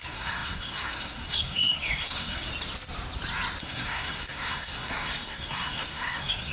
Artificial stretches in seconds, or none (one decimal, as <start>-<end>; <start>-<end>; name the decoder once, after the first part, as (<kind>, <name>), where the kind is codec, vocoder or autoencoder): 0.0-2.5 (codec, SNAC); 3.6-6.5